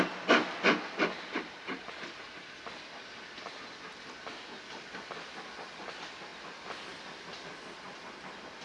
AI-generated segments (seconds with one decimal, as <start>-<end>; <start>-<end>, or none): none